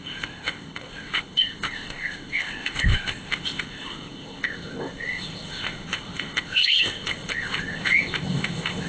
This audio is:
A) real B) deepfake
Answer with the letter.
B